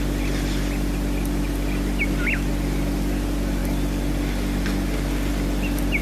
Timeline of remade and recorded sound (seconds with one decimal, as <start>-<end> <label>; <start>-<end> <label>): 0.0-6.0 recorded